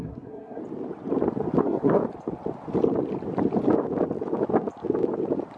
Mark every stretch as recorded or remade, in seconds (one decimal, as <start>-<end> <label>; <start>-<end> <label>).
0.0-0.6 remade; 0.6-1.6 recorded; 1.6-2.0 remade; 2.0-5.6 recorded